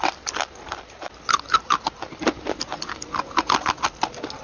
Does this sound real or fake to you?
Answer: real